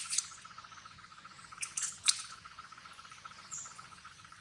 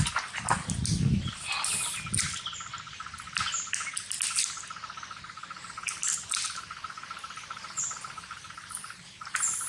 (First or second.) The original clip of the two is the second